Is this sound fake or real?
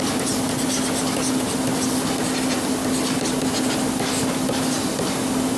real